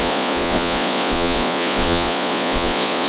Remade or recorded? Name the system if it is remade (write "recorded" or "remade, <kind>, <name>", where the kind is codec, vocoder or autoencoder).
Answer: remade, vocoder, Vocos